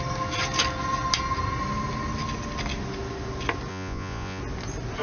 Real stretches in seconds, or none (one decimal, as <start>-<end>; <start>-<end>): 0.0-3.7; 4.4-5.0